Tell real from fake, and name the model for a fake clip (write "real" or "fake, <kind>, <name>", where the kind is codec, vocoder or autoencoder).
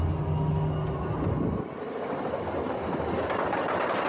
real